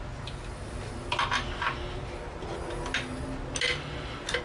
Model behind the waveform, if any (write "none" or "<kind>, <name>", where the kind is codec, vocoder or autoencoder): none